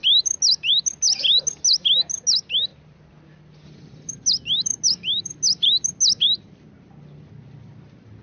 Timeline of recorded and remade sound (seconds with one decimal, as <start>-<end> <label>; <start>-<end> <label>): 0.0-8.2 recorded